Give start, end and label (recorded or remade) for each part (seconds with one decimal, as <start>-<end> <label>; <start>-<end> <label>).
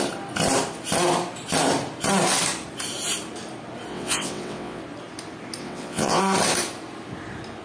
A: 0.0-3.9 recorded; 3.9-4.8 remade; 4.8-5.6 recorded; 5.6-6.2 remade; 6.2-7.6 recorded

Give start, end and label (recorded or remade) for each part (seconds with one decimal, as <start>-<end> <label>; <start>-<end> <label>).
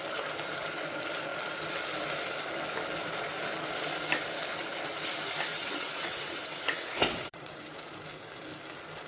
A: 0.0-5.5 recorded; 5.5-7.8 remade; 7.8-9.1 recorded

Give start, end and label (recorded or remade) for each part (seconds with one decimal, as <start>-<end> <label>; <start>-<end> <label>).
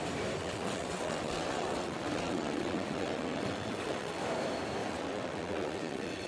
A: 0.0-0.4 recorded; 0.4-4.2 remade; 4.2-4.8 recorded; 4.8-6.3 remade